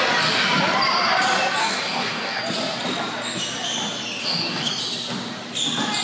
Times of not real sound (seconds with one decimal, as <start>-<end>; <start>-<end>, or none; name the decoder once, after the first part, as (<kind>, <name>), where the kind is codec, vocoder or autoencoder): 1.6-2.4 (codec, DAC); 4.2-4.7